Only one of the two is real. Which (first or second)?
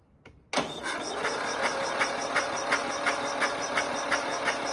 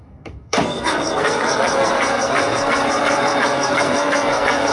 first